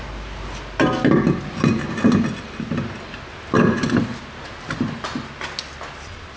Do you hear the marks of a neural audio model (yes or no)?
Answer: no